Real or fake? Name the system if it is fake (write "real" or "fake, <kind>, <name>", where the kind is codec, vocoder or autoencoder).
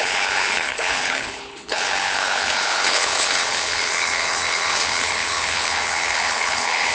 fake, codec, HILCodec